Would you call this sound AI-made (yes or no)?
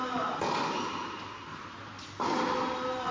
no